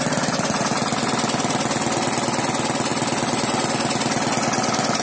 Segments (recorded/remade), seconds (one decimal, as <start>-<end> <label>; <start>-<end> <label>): 0.0-5.0 recorded